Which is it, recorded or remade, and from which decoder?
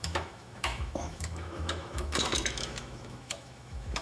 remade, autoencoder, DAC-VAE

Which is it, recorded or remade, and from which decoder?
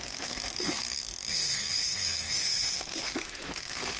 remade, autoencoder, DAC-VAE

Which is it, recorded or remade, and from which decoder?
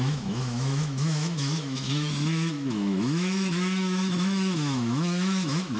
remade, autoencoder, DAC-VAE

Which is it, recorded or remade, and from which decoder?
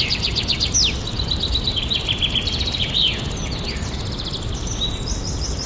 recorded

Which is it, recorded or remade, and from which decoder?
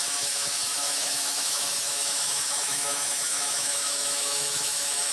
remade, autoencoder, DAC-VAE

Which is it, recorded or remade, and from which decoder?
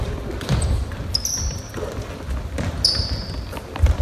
recorded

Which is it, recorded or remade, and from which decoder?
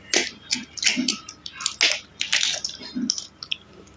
recorded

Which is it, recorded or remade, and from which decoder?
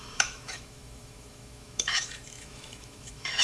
remade, autoencoder, DAC-VAE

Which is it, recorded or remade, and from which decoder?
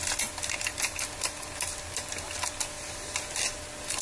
recorded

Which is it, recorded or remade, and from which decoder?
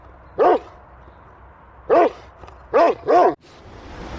recorded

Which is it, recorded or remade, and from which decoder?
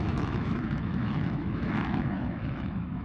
remade, autoencoder, DAC-VAE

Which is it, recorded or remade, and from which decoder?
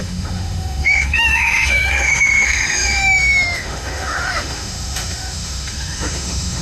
remade, autoencoder, DAC-VAE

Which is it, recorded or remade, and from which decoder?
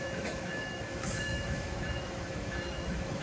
remade, autoencoder, DAC-VAE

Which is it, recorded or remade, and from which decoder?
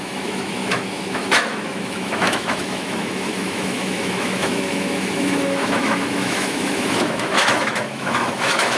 remade, autoencoder, DAC-VAE